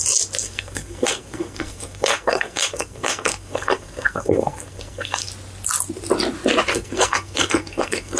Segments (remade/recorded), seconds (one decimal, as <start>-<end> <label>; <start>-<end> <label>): 0.0-0.4 recorded; 0.4-5.3 remade; 5.3-6.7 recorded; 6.7-8.2 remade